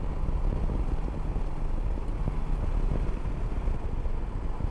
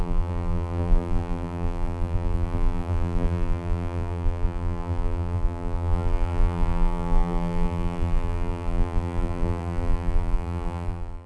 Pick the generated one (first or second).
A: second